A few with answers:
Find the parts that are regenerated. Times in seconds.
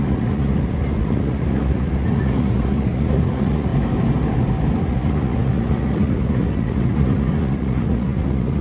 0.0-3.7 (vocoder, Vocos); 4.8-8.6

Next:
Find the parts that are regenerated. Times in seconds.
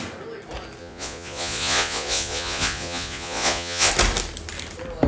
0.8-3.9 (vocoder, Vocos)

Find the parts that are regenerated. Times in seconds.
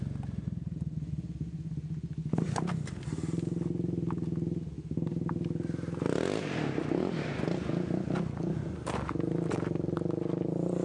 none